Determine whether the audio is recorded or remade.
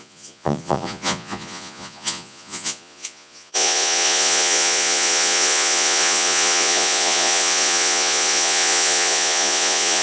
remade